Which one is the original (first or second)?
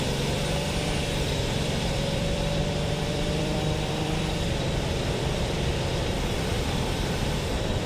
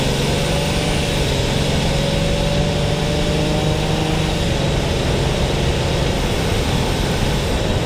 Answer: second